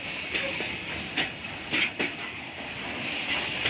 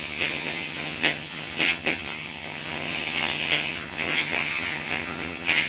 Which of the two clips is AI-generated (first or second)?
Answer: second